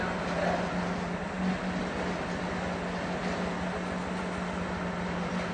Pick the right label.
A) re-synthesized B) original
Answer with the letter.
B